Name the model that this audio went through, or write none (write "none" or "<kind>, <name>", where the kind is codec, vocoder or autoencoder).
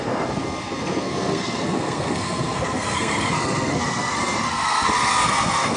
codec, SNAC